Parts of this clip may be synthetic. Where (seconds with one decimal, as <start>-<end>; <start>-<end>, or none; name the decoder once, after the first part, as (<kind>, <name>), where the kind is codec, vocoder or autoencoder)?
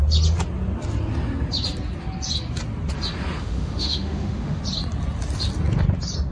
3.4-4.6 (autoencoder, DAC-VAE)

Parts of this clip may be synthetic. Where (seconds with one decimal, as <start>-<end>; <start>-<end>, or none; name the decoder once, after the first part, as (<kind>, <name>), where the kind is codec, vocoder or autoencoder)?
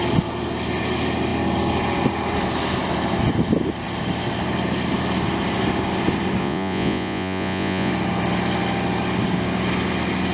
6.4-7.9 (vocoder, Vocos)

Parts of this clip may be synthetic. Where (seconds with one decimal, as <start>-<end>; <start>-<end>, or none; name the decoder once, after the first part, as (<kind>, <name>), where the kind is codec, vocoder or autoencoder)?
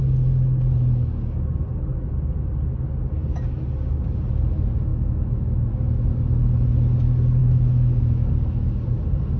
4.9-5.7 (autoencoder, DAC-VAE); 7.4-8.0